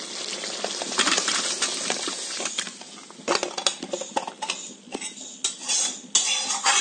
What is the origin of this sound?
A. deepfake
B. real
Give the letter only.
B